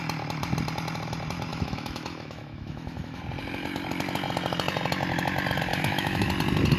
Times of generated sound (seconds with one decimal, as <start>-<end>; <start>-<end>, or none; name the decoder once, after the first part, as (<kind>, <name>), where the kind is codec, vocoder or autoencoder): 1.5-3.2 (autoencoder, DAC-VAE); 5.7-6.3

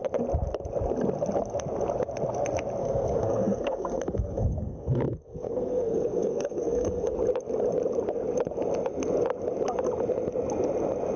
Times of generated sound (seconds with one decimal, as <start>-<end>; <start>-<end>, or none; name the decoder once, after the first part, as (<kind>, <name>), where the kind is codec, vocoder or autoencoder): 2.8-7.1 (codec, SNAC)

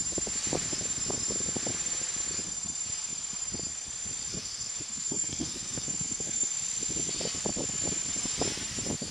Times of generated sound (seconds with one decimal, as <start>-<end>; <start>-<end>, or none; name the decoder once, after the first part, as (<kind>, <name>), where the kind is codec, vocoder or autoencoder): 4.3-6.5 (codec, SNAC)

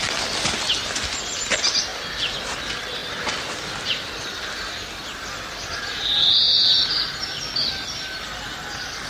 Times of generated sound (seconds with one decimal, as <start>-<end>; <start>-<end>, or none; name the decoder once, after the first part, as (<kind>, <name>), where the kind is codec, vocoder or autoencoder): 3.0-7.5 (vocoder, BigVGAN v2)

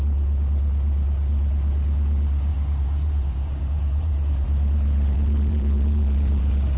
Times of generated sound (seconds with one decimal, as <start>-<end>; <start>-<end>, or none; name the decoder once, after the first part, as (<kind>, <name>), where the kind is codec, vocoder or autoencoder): 2.5-6.8 (vocoder, BigVGAN v2)